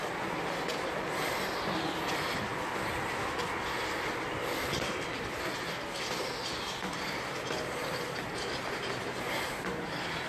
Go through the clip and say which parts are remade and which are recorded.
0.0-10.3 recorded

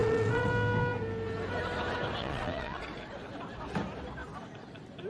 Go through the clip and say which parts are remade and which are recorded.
0.0-0.5 remade; 0.5-2.2 recorded; 2.2-2.8 remade; 2.8-5.1 recorded

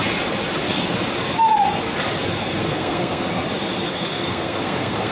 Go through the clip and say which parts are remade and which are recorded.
0.0-2.6 recorded; 2.6-3.4 remade; 3.4-3.9 recorded; 3.9-5.1 remade